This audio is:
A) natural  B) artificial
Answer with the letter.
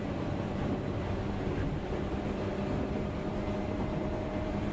B